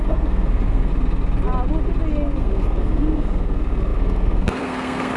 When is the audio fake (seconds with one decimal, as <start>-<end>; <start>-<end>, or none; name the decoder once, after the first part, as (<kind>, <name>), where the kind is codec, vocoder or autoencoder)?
0.0-0.9 (codec, SNAC); 2.4-5.2